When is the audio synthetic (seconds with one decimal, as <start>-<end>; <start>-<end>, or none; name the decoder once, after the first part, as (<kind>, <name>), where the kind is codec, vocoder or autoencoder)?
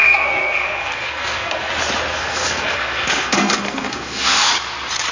0.0-1.7 (codec, SNAC); 2.1-4.5